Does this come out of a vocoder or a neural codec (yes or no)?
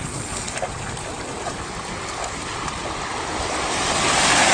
no